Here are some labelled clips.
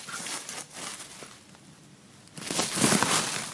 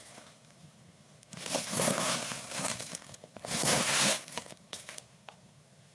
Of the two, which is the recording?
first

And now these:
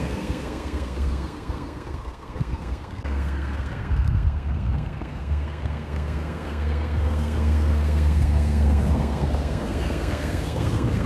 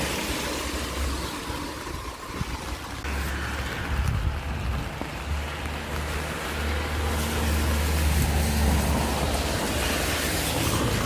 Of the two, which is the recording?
second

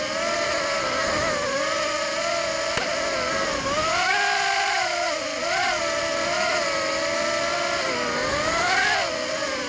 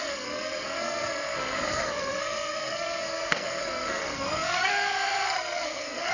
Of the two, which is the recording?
first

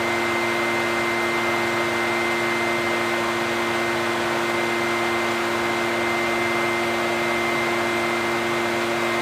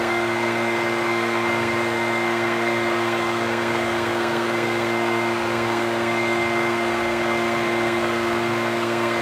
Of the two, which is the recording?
first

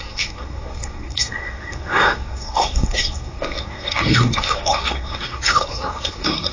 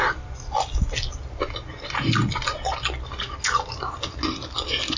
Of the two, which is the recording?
second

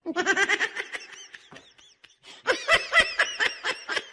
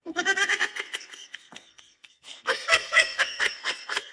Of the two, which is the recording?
first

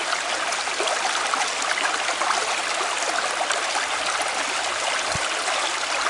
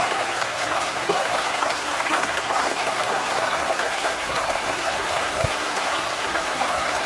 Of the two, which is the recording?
first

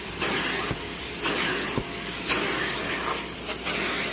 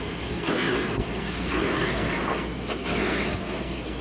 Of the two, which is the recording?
first